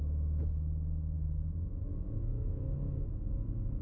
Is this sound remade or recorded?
remade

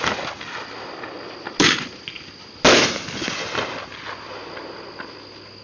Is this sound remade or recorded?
recorded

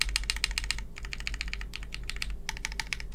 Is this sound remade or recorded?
recorded